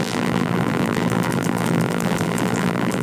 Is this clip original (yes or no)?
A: no